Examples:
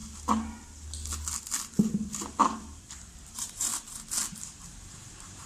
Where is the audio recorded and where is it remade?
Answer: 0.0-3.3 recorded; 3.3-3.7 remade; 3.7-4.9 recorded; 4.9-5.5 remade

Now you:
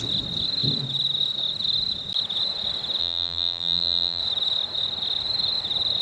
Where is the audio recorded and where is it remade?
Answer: 0.0-3.0 recorded; 3.0-4.2 remade; 4.2-6.0 recorded

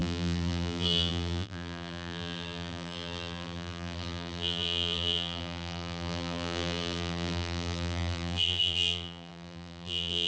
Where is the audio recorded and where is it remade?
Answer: 0.0-10.3 remade

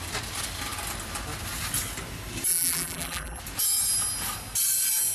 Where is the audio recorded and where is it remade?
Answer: 0.0-2.5 recorded; 2.5-3.4 remade; 3.4-5.1 recorded

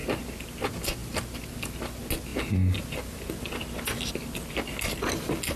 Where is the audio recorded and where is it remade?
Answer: 0.0-5.6 recorded

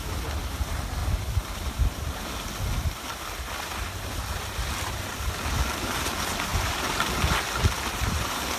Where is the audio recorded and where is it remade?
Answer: 0.0-8.6 recorded